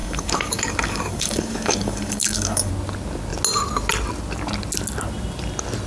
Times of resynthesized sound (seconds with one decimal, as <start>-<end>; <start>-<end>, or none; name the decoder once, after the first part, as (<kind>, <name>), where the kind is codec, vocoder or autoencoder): 0.0-2.7 (codec, DAC)